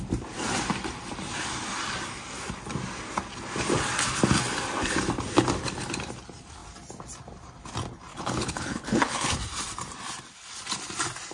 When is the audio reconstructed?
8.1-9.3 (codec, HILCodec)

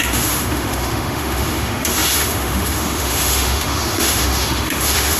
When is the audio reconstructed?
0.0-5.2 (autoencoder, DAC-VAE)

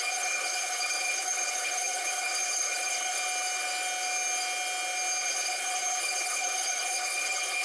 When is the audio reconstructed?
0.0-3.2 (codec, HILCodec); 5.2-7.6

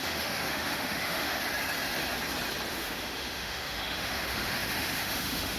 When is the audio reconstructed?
0.0-1.4 (autoencoder, DAC-VAE); 2.7-5.6

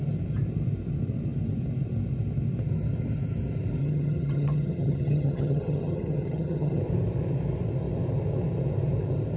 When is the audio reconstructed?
3.8-6.8 (vocoder, HiFi-GAN)